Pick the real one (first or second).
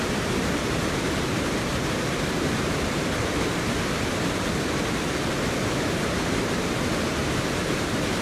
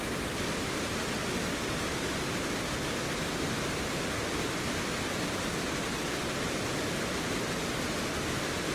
second